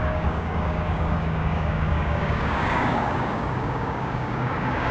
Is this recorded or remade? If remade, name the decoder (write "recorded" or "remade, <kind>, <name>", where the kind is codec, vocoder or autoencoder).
remade, codec, DAC